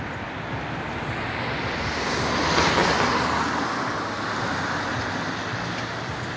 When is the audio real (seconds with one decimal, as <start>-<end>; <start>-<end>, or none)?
0.0-6.4